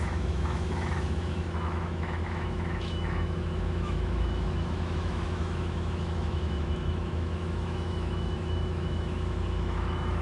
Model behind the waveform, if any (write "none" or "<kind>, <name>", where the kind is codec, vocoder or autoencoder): autoencoder, DAC-VAE